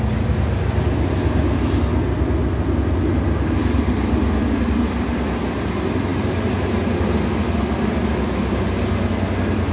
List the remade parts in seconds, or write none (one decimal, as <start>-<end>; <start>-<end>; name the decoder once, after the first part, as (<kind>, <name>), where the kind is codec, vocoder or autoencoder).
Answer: none